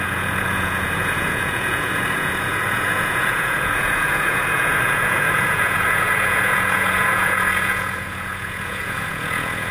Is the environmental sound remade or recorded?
remade